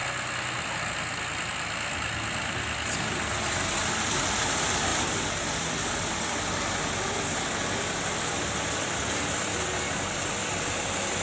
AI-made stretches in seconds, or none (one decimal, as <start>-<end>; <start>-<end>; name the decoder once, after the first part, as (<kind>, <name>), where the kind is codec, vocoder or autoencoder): none